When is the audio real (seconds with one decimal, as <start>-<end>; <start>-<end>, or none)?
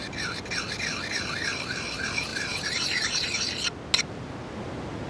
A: 0.0-2.3; 3.4-5.1